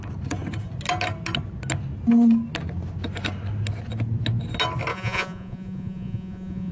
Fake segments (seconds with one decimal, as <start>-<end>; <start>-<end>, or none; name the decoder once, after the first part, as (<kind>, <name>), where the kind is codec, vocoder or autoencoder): 4.9-6.7 (vocoder, Vocos)